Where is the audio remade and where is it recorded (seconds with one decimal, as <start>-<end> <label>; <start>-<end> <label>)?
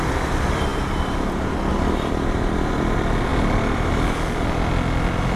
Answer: 0.0-5.4 recorded